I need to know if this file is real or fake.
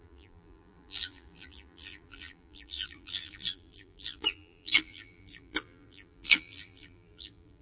fake